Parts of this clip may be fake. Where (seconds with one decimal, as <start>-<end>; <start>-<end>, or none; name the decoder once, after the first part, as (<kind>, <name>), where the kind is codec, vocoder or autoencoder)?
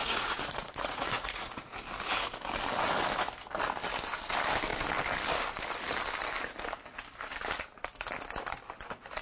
0.0-1.6 (vocoder, Vocos)